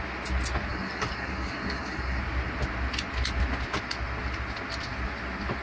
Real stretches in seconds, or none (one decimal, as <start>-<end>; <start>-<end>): 0.0-0.7; 2.2-5.6